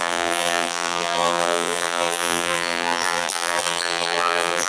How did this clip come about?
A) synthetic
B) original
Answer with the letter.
A